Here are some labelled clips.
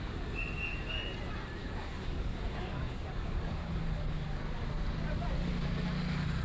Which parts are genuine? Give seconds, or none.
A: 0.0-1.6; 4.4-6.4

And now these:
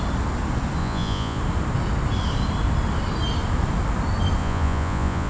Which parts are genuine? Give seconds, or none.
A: 0.0-0.8; 1.4-4.4

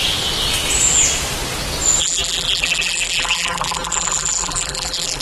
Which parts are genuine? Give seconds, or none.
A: 0.0-2.0

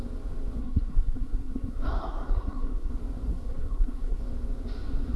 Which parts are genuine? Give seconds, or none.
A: 0.0-0.6; 2.9-3.3; 4.2-5.2

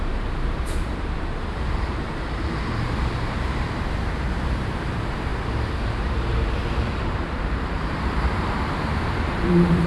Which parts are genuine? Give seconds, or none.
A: none

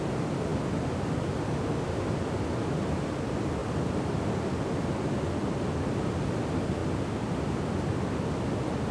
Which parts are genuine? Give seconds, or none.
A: 0.0-8.9

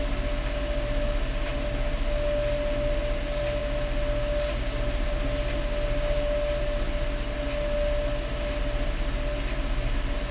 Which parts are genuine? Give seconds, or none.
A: 0.0-10.3

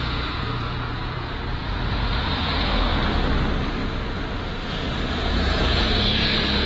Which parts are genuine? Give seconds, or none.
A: 2.9-4.7